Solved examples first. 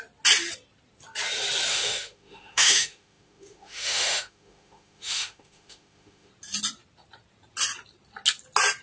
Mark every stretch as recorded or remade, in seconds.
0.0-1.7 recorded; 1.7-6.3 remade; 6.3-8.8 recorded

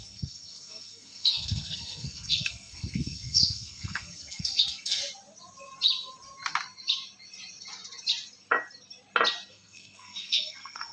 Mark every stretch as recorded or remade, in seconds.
0.0-5.0 remade; 5.0-9.5 recorded; 9.5-10.9 remade